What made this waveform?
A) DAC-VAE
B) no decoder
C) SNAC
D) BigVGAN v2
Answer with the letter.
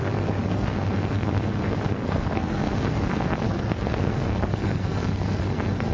C